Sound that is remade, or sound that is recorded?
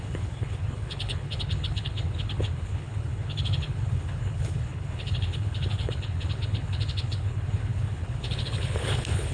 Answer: remade